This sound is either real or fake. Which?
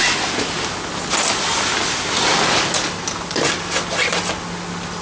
real